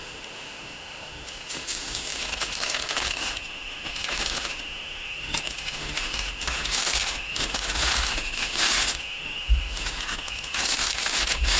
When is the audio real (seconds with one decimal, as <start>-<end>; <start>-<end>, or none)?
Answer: none